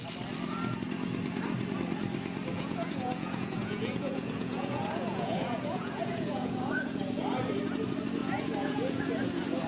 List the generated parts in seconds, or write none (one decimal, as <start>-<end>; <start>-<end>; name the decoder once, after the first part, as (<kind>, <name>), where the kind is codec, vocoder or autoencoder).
2.5-7.0 (vocoder, Vocos); 8.2-9.1